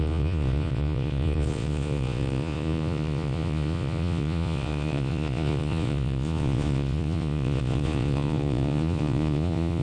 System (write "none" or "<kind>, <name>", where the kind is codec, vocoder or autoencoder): vocoder, Vocos